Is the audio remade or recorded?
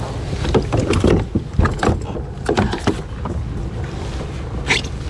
recorded